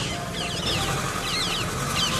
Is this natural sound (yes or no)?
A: yes